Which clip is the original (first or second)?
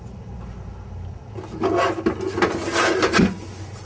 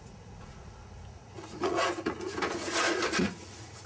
first